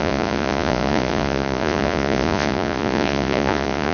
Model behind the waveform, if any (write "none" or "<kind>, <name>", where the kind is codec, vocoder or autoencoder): vocoder, Vocos